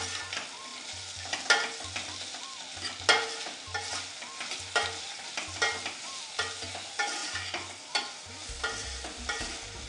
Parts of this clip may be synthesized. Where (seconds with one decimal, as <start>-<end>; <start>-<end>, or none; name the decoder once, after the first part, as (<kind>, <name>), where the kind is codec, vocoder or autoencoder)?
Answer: none